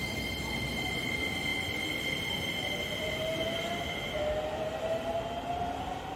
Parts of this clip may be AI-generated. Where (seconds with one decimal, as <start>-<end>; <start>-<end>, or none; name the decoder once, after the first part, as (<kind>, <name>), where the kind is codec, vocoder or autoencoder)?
none